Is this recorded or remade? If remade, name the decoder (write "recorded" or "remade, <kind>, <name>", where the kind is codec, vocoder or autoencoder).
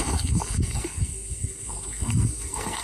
remade, codec, SNAC